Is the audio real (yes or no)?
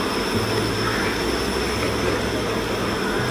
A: yes